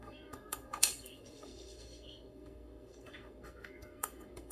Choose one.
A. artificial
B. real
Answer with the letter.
A